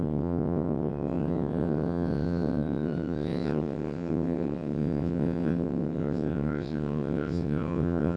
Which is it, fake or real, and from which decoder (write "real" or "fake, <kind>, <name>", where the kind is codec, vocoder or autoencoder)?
fake, vocoder, WaveNeXt